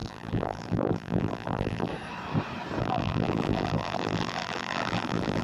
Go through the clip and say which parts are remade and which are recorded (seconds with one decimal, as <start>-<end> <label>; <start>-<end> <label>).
0.0-1.9 remade; 1.9-2.8 recorded; 2.8-5.4 remade